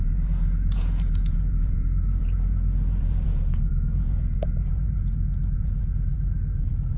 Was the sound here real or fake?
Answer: fake